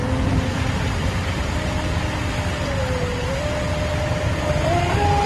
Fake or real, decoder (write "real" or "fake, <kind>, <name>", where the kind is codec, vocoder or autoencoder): real